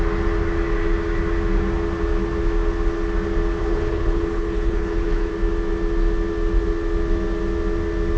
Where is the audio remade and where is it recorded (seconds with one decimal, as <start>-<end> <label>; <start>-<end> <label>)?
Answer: 0.0-3.6 recorded; 3.6-5.3 remade; 5.3-8.2 recorded

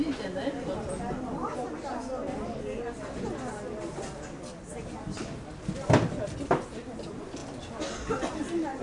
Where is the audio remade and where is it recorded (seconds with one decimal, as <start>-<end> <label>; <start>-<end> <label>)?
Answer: 0.0-8.8 recorded

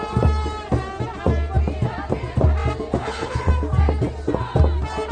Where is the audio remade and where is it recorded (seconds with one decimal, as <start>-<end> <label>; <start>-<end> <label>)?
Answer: 0.0-3.0 recorded; 3.0-3.5 remade; 3.5-5.1 recorded

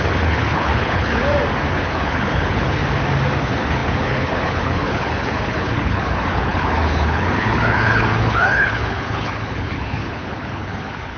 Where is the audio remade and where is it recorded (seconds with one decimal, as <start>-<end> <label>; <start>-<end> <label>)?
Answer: 0.0-1.2 remade; 1.2-1.7 recorded; 1.7-2.8 remade; 2.8-3.4 recorded; 3.4-11.2 remade

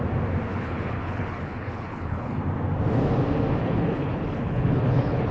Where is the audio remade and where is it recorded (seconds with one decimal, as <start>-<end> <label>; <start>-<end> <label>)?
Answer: 0.0-0.5 recorded; 0.5-2.4 remade; 2.4-3.6 recorded; 3.6-5.3 remade

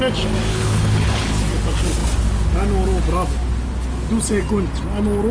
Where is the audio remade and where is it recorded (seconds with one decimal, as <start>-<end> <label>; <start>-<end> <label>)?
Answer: 0.0-0.5 recorded; 0.5-1.3 remade; 1.3-5.3 recorded

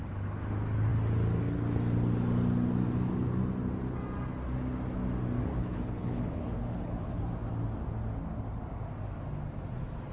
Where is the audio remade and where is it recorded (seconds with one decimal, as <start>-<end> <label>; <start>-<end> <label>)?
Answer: 0.0-5.5 recorded; 5.5-7.2 remade; 7.2-10.1 recorded